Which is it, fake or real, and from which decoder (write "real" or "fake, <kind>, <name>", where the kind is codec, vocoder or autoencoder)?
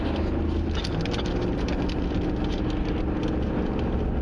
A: real